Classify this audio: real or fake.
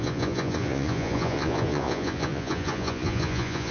fake